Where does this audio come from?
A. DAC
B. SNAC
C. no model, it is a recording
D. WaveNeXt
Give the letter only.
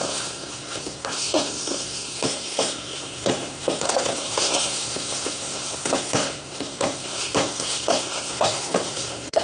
B